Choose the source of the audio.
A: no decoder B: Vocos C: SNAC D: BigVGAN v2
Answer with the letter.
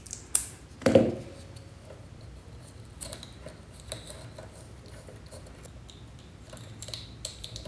A